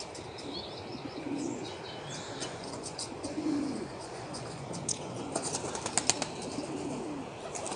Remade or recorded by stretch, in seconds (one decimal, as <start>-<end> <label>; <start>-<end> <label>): 0.0-0.9 recorded; 0.9-1.8 remade; 1.8-2.4 recorded; 2.4-5.5 remade; 5.5-7.8 recorded